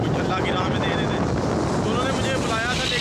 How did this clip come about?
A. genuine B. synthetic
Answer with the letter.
A